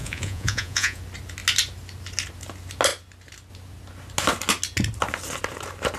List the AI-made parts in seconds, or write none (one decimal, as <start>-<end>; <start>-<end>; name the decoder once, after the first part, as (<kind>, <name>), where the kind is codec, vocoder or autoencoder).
0.0-1.0 (vocoder, Vocos)